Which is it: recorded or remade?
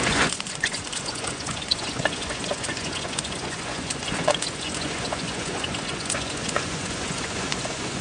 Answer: remade